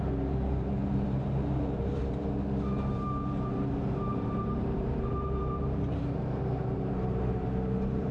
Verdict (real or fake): fake